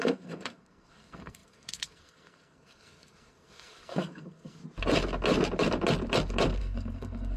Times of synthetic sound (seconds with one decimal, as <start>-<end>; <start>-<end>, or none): 0.0-4.6; 6.6-7.4